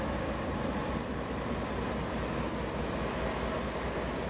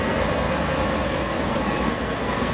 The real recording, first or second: first